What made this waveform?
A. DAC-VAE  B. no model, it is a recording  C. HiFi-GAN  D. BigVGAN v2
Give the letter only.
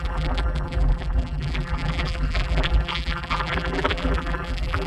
D